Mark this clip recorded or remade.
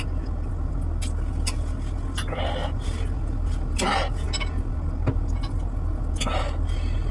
recorded